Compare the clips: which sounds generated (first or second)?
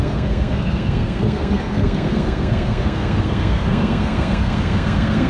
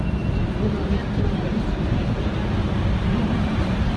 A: first